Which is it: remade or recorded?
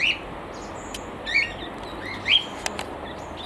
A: recorded